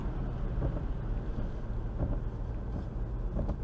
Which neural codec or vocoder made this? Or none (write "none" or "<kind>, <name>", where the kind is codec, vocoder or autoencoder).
none